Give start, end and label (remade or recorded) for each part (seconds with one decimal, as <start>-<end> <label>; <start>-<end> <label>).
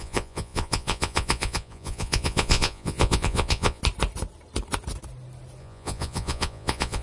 0.0-3.8 remade; 3.8-5.6 recorded; 5.6-7.0 remade